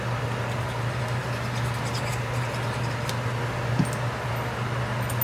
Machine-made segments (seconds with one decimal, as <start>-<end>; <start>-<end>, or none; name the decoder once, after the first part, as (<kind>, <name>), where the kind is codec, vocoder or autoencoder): none